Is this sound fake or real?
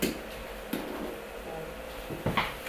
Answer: real